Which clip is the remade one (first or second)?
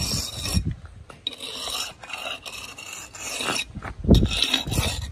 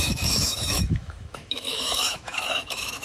second